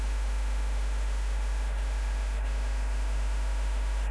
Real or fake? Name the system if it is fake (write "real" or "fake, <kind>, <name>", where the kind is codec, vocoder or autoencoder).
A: fake, autoencoder, DAC-VAE